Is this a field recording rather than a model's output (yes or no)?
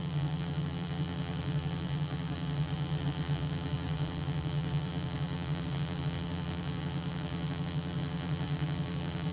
no